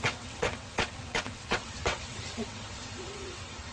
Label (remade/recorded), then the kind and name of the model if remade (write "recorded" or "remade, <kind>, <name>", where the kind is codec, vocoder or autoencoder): remade, vocoder, WaveNeXt